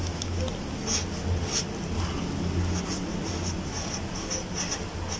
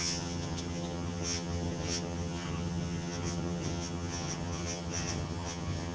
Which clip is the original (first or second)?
first